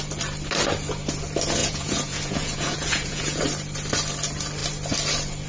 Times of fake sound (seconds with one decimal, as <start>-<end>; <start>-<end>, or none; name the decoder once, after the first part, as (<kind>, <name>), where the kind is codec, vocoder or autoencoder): 1.6-3.4 (vocoder, Vocos)